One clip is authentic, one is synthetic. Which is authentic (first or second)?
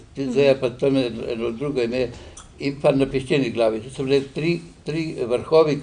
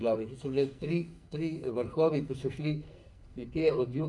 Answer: first